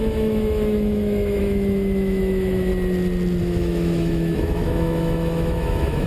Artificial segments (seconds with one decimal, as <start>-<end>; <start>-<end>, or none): 0.0-2.7; 3.4-6.1